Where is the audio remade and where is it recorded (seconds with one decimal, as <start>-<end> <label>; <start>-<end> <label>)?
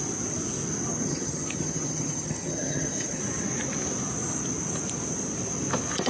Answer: 0.0-0.9 recorded; 0.9-3.2 remade; 3.2-6.1 recorded